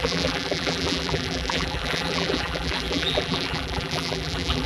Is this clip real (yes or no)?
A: no